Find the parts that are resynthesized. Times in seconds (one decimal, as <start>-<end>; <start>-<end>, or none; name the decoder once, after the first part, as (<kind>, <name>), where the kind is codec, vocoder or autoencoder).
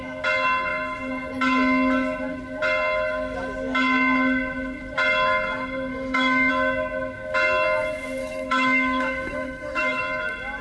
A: 5.9-6.5 (autoencoder, DAC-VAE); 8.2-10.0